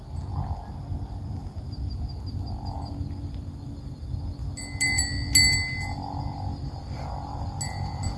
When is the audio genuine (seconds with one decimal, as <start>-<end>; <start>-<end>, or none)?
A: 0.0-8.2

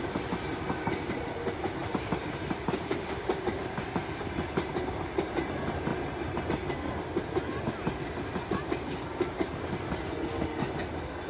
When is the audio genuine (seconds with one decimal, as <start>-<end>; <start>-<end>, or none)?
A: 0.0-1.8; 4.9-5.9; 6.4-8.6; 9.5-11.3

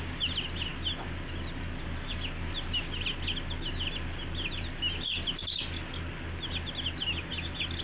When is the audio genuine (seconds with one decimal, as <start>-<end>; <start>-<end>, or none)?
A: 0.0-7.8